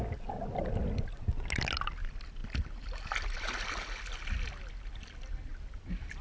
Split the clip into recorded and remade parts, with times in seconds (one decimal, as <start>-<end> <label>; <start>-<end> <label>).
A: 0.0-6.2 recorded